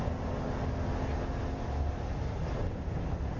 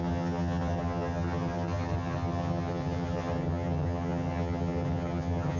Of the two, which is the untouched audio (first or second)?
first